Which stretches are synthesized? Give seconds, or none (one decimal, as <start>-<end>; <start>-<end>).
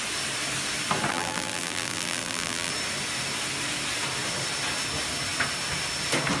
1.1-2.7